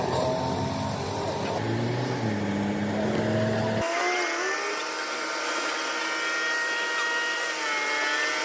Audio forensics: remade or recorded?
recorded